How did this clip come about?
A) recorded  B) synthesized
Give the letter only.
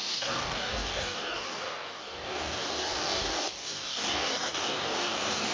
B